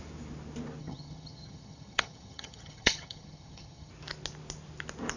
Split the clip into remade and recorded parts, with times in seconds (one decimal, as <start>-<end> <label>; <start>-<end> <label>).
0.0-0.8 recorded; 0.8-3.9 remade; 3.9-5.2 recorded